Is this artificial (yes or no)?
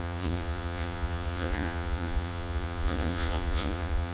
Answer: yes